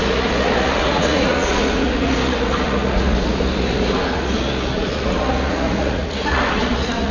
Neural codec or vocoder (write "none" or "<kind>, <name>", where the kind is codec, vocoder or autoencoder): vocoder, Vocos